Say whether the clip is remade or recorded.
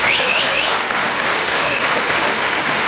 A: remade